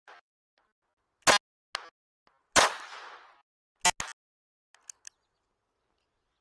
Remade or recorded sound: recorded